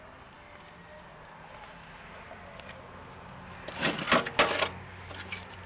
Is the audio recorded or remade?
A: recorded